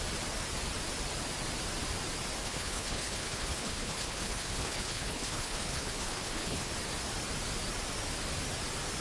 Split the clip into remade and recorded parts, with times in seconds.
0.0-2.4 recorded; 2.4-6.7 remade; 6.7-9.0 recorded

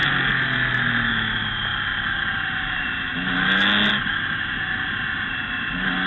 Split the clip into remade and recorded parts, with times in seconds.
0.0-6.1 recorded

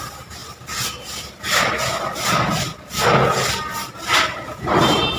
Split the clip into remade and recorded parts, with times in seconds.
0.0-5.2 recorded

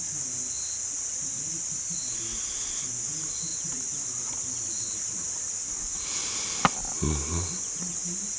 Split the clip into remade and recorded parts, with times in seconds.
0.0-3.5 recorded; 3.5-4.3 remade; 4.3-8.4 recorded

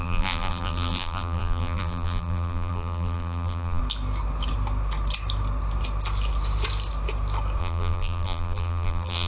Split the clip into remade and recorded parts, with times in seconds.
0.0-3.8 remade; 3.8-7.6 recorded; 7.6-9.3 remade

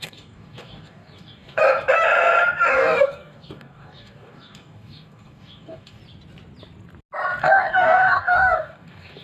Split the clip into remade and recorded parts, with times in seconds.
0.0-1.6 remade; 1.6-2.7 recorded; 2.7-6.0 remade; 6.0-7.4 recorded; 7.4-9.2 remade

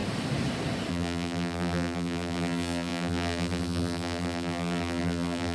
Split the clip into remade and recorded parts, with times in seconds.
0.0-0.9 recorded; 0.9-5.5 remade

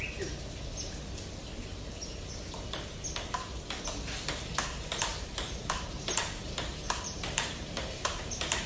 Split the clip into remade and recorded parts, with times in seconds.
0.0-5.1 recorded; 5.1-8.7 remade